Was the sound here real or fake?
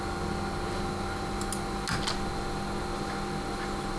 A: real